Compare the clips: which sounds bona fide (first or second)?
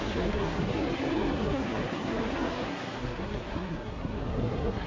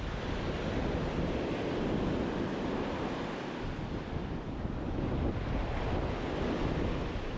second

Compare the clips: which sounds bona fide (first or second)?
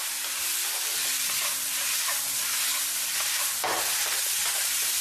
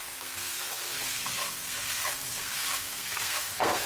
first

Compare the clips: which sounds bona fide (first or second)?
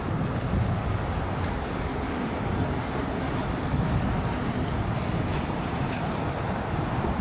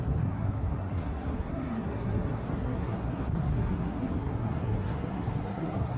first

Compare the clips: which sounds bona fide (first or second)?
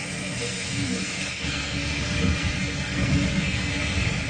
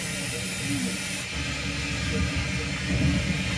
second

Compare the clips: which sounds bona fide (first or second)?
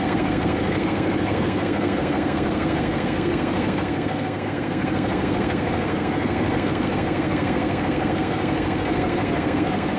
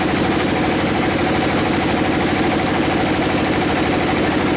second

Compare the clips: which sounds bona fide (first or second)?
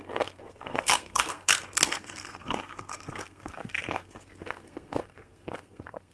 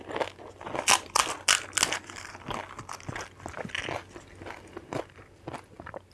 second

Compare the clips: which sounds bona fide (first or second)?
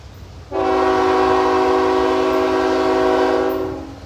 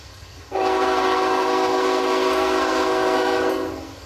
first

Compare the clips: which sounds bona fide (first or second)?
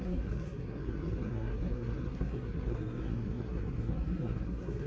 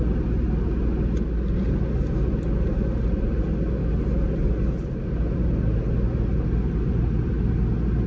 second